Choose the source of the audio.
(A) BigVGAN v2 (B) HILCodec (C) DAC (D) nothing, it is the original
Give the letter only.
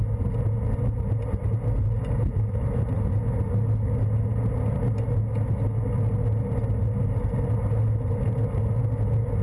D